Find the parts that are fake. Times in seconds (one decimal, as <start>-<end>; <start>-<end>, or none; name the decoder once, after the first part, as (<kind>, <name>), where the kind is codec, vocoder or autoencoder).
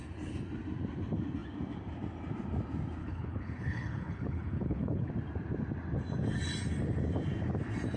3.0-5.1 (codec, HILCodec)